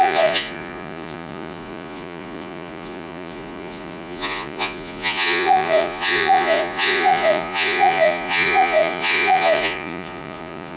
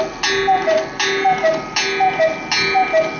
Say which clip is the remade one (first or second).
first